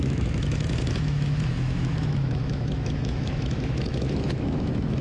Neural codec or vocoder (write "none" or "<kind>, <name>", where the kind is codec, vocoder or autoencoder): autoencoder, DAC-VAE